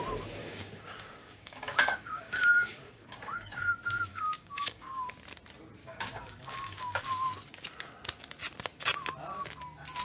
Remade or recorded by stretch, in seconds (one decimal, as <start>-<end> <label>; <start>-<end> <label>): 0.0-0.4 recorded; 0.4-3.6 remade; 3.6-4.1 recorded; 4.1-5.0 remade; 5.0-5.8 recorded; 5.8-7.0 remade; 7.0-10.0 recorded